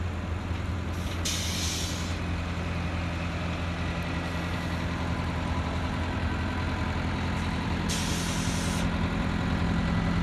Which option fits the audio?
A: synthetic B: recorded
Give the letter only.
B